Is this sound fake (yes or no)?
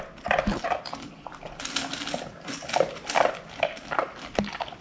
no